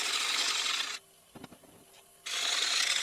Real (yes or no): yes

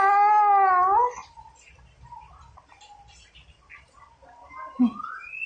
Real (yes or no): yes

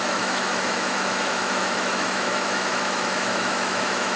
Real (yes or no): no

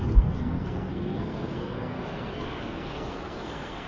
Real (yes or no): no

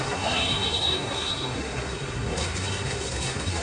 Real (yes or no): no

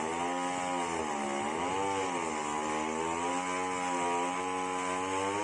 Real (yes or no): yes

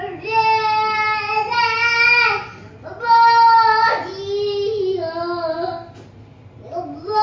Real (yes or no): yes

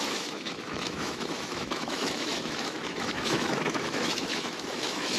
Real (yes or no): no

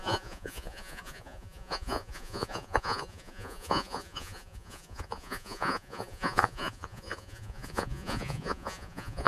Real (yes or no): no